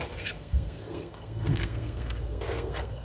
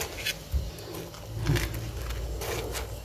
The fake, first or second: first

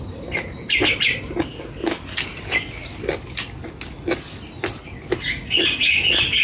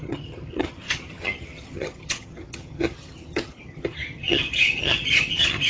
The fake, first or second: second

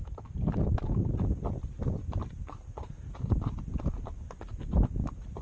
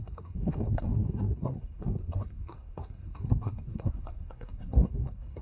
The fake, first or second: second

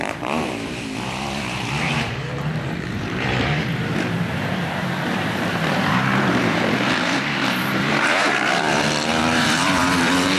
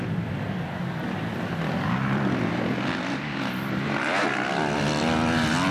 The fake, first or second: first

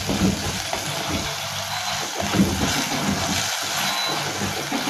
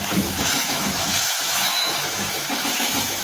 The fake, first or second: second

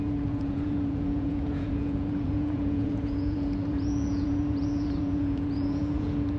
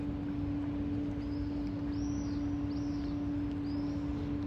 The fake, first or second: first